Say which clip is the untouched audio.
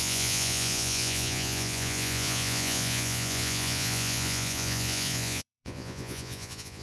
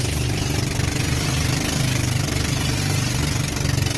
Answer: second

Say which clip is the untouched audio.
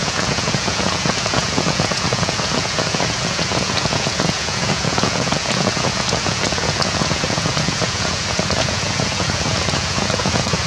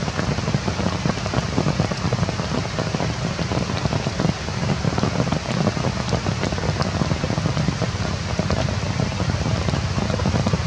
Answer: second